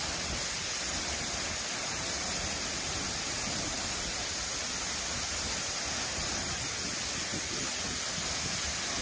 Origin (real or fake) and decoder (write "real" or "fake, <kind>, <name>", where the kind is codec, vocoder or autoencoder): real